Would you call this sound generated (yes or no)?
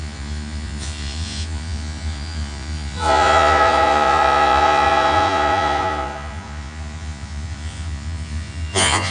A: yes